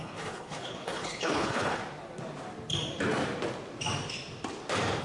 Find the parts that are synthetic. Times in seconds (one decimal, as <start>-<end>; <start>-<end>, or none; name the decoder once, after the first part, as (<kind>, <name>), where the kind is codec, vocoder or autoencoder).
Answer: 0.0-1.8 (codec, HILCodec)